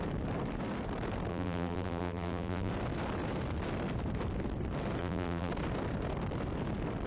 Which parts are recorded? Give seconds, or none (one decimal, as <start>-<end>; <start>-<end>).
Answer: 0.0-1.3; 2.7-5.0; 5.5-7.1